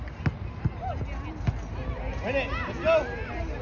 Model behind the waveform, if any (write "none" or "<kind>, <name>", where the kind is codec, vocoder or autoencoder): none